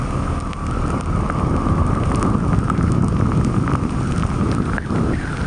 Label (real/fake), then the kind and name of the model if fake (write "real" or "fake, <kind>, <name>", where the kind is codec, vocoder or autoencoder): real